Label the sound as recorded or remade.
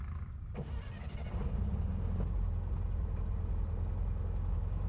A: recorded